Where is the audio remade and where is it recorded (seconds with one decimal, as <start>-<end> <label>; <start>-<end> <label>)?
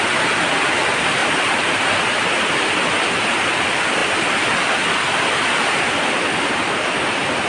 0.0-1.2 recorded; 1.2-2.1 remade; 2.1-7.5 recorded